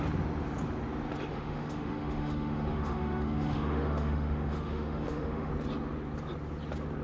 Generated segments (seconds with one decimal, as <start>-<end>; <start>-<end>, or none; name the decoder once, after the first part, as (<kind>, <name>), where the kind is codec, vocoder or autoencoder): 1.3-5.5 (autoencoder, DAC-VAE)